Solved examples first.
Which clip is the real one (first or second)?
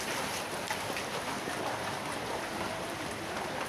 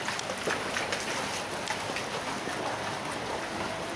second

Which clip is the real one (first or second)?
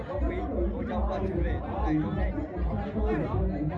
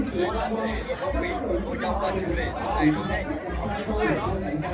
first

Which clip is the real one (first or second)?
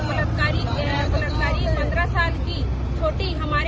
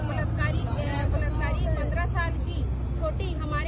second